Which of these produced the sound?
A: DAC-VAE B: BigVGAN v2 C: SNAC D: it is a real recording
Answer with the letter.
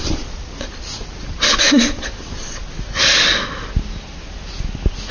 D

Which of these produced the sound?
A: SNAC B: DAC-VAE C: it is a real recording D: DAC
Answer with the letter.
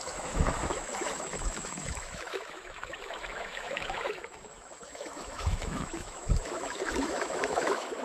B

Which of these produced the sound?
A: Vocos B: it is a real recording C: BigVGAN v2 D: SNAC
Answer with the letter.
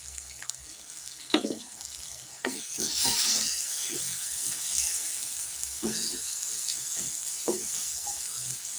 D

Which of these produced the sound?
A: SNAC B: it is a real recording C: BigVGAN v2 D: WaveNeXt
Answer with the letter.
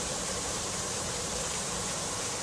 C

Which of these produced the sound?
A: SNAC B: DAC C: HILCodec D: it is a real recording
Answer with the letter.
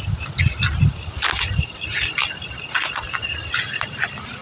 D